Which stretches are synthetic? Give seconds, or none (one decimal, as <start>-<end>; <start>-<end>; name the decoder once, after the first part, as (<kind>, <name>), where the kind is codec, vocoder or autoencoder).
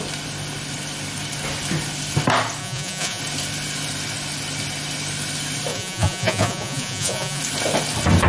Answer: 2.6-3.2 (vocoder, Vocos); 5.7-7.4